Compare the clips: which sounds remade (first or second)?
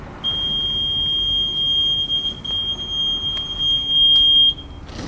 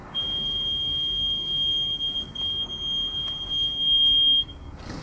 second